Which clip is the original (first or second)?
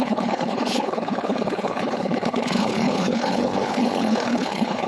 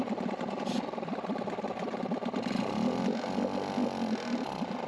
second